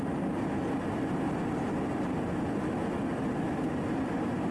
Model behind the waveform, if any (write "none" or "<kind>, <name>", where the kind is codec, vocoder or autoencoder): none